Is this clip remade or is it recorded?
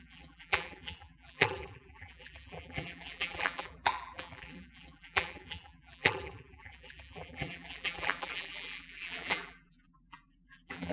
remade